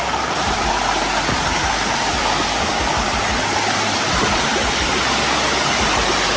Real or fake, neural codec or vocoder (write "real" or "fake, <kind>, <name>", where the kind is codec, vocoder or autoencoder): real